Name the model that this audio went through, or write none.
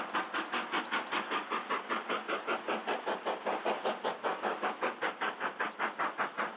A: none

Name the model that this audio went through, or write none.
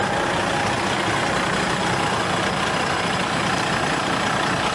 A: none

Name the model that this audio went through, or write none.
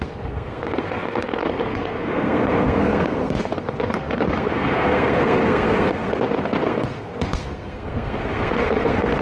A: codec, SNAC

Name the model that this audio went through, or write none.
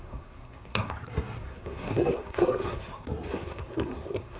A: codec, SNAC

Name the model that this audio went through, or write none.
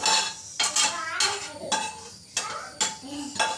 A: none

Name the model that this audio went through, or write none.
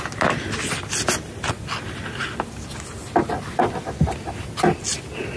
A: none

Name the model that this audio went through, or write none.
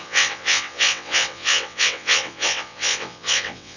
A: vocoder, WaveNeXt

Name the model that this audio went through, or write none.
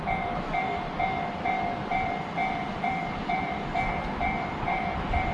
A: vocoder, BigVGAN v2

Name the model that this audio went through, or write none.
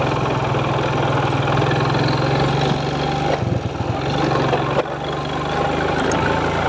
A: none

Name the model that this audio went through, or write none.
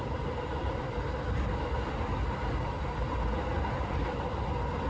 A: none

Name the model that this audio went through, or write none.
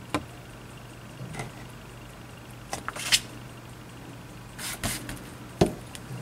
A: none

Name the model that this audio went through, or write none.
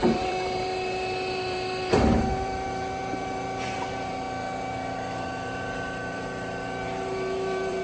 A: vocoder, BigVGAN v2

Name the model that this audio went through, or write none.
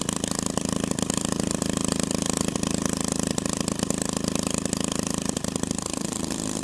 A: none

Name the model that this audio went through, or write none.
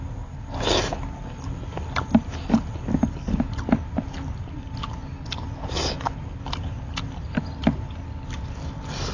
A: none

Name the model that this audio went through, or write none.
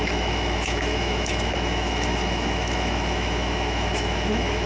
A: autoencoder, DAC-VAE